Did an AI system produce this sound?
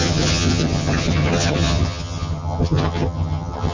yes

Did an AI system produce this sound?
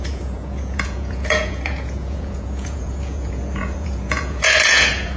yes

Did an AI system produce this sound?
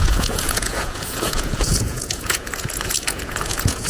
yes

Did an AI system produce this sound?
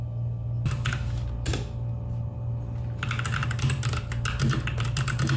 no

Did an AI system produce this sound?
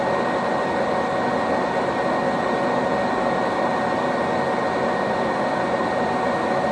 no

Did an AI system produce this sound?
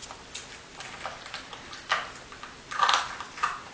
no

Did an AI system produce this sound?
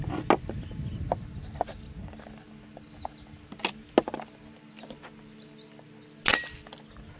no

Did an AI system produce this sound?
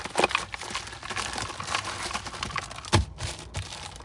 no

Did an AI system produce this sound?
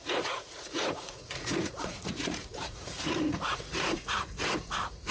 yes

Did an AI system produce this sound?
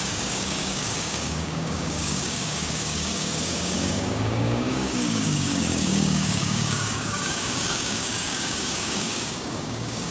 yes